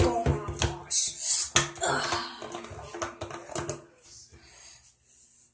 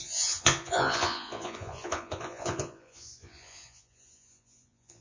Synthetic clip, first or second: second